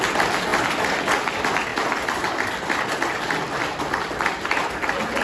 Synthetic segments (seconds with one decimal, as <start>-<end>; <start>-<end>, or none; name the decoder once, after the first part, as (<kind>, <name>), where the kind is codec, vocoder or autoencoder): 1.7-3.2 (vocoder, BigVGAN v2)